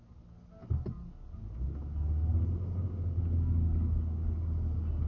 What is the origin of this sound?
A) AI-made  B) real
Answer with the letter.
B